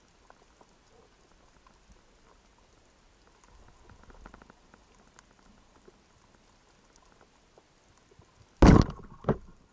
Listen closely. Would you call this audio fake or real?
real